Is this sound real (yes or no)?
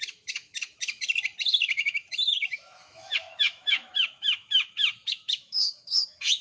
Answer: no